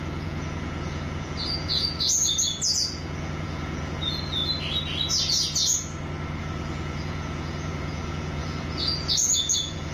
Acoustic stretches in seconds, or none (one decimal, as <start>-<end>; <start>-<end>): 4.4-6.4